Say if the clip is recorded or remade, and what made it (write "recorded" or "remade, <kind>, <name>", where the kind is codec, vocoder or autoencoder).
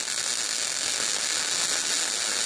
recorded